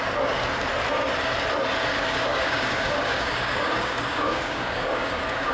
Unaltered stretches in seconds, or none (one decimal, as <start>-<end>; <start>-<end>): 0.0-1.9